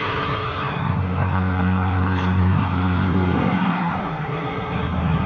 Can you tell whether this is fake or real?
fake